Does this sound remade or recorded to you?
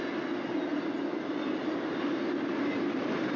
recorded